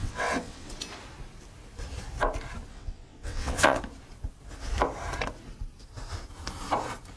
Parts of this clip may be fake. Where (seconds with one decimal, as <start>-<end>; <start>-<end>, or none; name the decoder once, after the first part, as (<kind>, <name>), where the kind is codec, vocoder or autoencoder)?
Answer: 0.0-0.7 (vocoder, WaveNeXt); 2.7-3.8